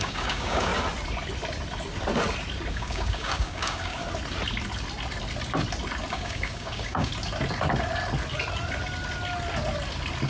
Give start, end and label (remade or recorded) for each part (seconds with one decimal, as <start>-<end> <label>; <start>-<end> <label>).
0.0-0.7 remade; 0.7-2.7 recorded; 2.7-4.0 remade; 4.0-6.1 recorded; 6.1-7.1 remade; 7.1-10.3 recorded

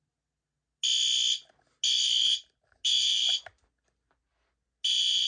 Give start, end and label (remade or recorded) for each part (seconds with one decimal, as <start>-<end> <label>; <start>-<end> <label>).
0.0-5.3 recorded